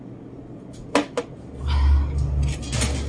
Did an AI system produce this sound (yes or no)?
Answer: no